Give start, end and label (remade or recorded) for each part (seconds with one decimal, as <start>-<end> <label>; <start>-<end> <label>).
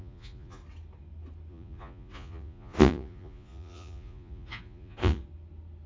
0.0-0.6 remade; 0.6-1.5 recorded; 1.5-5.2 remade; 5.2-5.9 recorded